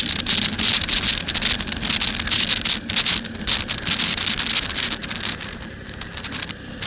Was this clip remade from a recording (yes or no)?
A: no